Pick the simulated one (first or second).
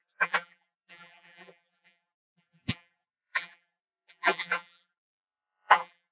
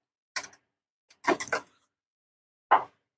first